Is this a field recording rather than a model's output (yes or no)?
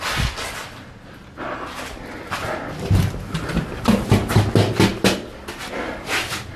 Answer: yes